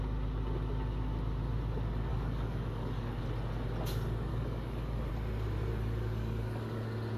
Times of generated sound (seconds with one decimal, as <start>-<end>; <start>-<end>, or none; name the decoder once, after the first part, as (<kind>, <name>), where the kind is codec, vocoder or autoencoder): 2.1-3.2 (codec, DAC); 4.3-5.1; 5.7-6.8